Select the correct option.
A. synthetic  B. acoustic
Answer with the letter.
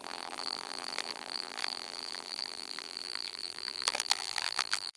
A